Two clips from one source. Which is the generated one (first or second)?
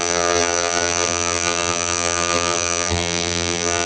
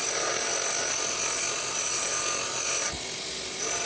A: first